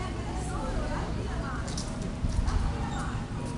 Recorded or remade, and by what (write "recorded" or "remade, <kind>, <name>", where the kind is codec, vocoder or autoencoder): recorded